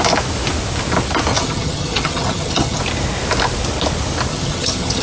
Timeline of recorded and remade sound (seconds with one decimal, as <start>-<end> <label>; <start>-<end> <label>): 0.0-1.3 recorded; 1.3-2.8 remade; 2.8-4.3 recorded; 4.3-5.0 remade